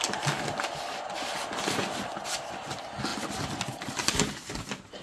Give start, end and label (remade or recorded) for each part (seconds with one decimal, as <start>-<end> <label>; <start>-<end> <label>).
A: 0.0-5.0 recorded